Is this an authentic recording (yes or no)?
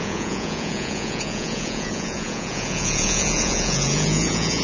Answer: no